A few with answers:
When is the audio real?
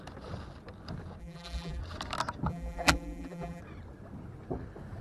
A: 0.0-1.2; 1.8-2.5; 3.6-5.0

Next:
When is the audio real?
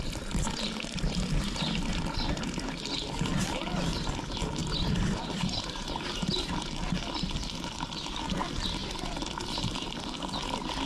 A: 0.0-4.6; 6.4-8.8; 9.7-10.9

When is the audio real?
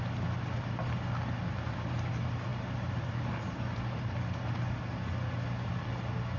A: none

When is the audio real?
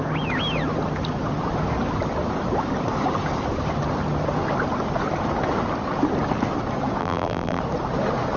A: 0.0-7.0; 7.6-8.4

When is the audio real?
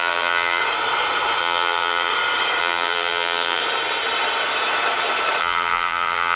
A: 0.6-1.4; 2.1-2.6; 3.6-5.4